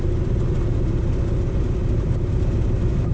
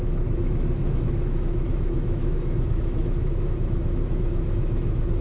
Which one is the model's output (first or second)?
second